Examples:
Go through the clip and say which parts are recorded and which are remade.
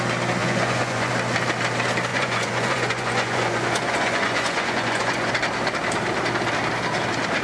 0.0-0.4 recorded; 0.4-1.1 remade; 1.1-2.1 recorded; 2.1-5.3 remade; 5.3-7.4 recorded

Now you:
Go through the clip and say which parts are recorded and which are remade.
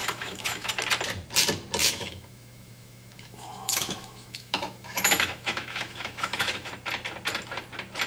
0.0-0.7 remade; 0.7-1.8 recorded; 1.8-6.7 remade; 6.7-8.1 recorded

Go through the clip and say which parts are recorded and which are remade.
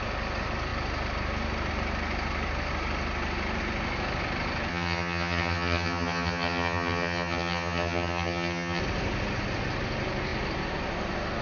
0.0-4.7 recorded; 4.7-8.8 remade; 8.8-11.4 recorded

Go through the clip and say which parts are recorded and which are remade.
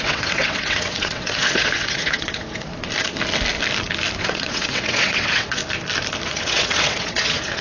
0.0-2.7 remade; 2.7-4.2 recorded; 4.2-5.6 remade; 5.6-6.3 recorded; 6.3-7.6 remade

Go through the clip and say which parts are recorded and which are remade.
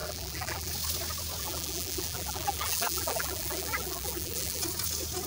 0.0-0.7 remade; 0.7-1.4 recorded; 1.4-4.6 remade; 4.6-5.3 recorded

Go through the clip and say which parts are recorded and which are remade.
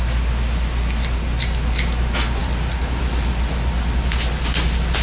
0.0-5.0 recorded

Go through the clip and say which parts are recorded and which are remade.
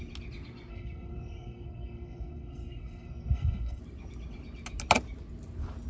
0.0-0.7 recorded; 0.7-3.8 remade; 3.8-5.9 recorded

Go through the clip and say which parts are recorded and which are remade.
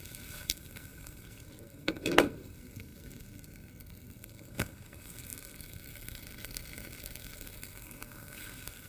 0.0-8.9 remade